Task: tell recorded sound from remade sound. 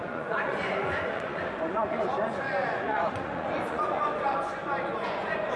remade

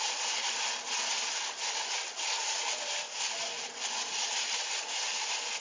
recorded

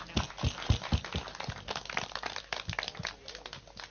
recorded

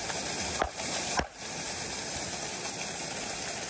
recorded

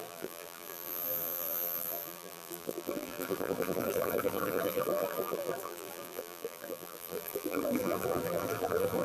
remade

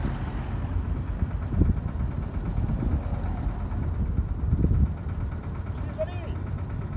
recorded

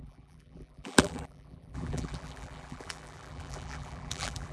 remade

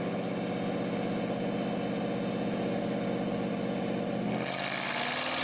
recorded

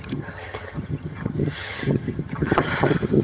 remade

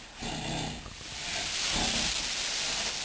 recorded